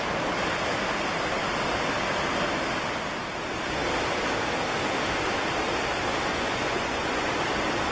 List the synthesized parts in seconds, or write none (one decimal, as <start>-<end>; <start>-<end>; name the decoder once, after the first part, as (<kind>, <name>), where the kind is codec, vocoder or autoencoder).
6.3-7.3 (vocoder, Vocos)